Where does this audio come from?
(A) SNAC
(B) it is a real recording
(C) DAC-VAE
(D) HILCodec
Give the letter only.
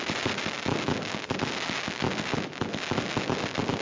B